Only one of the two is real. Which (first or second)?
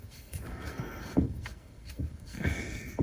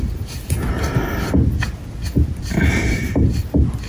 second